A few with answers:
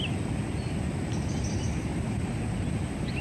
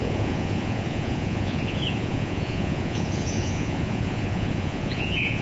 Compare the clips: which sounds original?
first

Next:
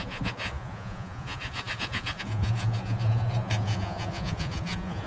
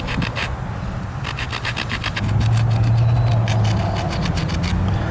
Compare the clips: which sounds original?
second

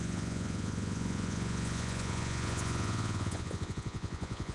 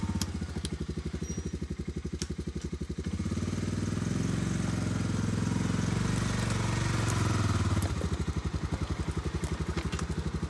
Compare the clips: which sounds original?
second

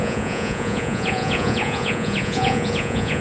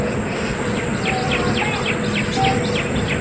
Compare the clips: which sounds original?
second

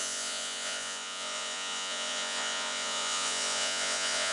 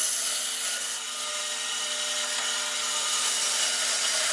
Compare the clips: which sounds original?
second